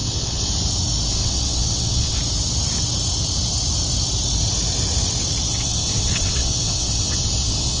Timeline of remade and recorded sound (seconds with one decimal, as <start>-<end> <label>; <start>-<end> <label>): 0.0-0.5 remade; 0.5-1.1 recorded; 1.1-2.2 remade; 2.2-5.5 recorded; 5.5-7.8 remade